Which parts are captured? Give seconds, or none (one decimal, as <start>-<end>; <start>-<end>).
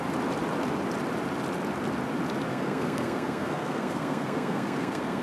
0.0-2.5